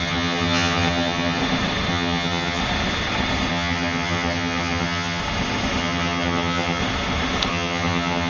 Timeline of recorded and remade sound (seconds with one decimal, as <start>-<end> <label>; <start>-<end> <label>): 0.0-1.4 remade; 1.4-1.9 recorded; 1.9-2.6 remade; 2.6-3.5 recorded; 3.5-5.2 remade; 5.2-5.8 recorded; 5.8-6.8 remade; 6.8-7.5 recorded; 7.5-8.3 remade